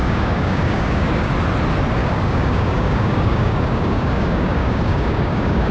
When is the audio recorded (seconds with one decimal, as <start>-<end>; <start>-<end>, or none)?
1.3-2.0